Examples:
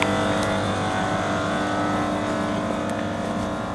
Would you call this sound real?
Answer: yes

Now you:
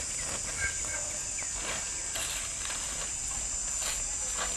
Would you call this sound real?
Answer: yes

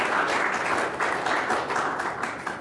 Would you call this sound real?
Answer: yes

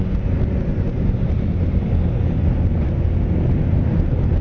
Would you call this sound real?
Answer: yes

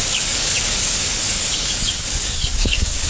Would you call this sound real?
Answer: no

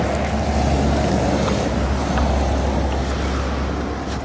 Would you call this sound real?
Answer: yes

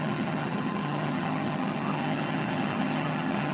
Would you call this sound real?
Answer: no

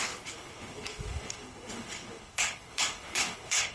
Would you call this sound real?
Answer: no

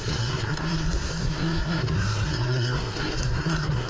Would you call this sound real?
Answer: no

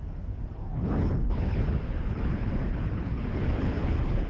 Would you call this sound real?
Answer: no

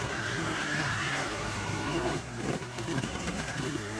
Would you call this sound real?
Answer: no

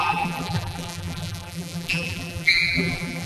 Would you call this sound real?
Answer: no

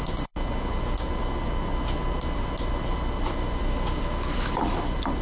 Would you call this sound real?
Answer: yes